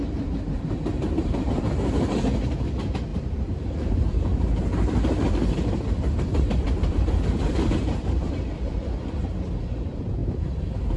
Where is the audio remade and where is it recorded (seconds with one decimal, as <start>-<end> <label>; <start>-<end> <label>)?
0.0-1.7 remade; 1.7-3.1 recorded; 3.1-8.3 remade; 8.3-11.0 recorded